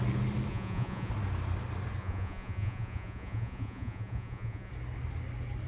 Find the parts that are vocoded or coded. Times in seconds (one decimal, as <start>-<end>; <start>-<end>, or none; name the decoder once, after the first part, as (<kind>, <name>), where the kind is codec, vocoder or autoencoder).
0.5-1.1 (vocoder, Vocos); 2.0-4.7